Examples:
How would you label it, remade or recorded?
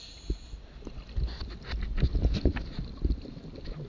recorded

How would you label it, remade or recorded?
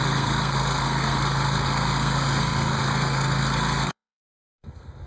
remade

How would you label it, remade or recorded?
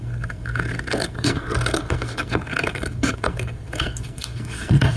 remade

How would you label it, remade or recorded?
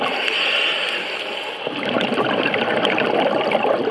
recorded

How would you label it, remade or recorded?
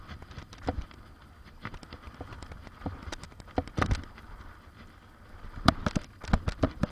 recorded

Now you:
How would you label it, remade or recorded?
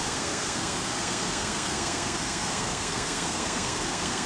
remade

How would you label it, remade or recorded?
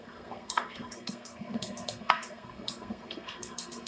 remade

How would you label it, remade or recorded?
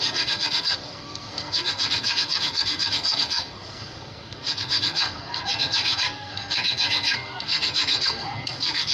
remade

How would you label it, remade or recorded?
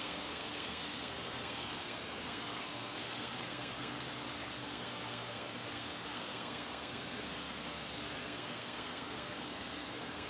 remade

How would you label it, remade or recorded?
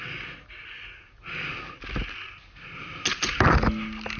recorded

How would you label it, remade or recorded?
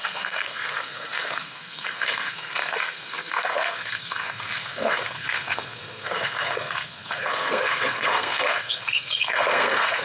remade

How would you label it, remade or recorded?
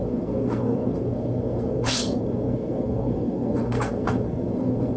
remade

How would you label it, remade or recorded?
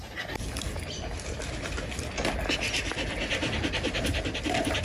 recorded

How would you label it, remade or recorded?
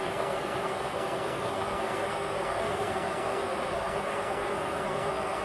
remade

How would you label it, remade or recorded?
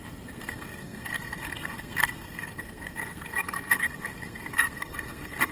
remade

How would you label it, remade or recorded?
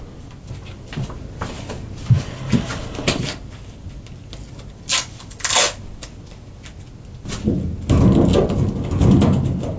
recorded